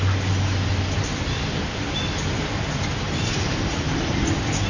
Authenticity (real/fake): real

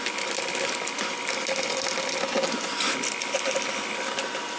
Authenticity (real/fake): real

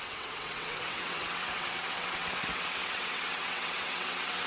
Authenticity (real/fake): fake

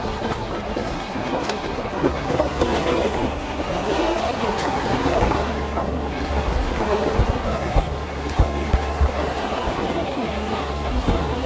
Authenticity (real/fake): fake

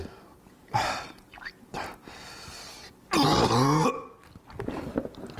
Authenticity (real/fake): real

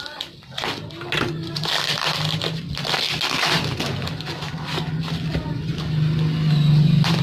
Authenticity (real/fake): real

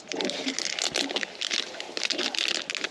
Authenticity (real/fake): real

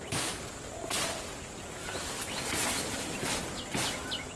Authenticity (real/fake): real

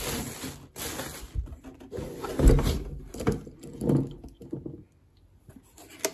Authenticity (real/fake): real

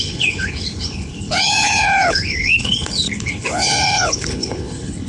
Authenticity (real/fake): fake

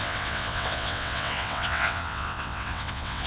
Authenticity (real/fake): fake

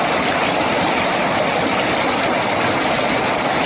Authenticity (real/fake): real